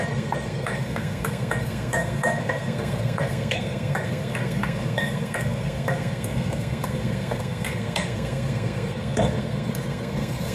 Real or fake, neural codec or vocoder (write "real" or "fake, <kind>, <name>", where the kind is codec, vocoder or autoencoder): fake, codec, SNAC